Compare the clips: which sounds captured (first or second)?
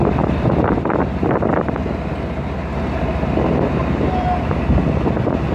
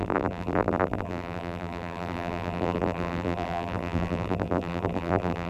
first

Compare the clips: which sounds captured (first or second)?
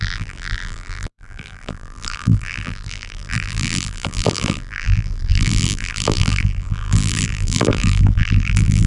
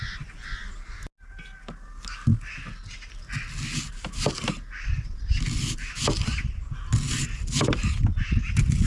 second